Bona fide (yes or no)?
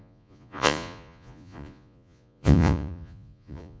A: no